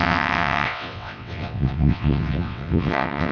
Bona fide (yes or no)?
no